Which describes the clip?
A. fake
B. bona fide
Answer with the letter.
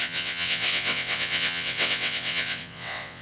A